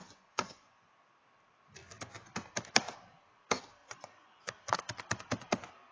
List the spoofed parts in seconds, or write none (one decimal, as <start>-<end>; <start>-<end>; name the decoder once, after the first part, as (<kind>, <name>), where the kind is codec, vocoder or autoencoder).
0.0-0.9 (vocoder, Vocos); 3.8-4.4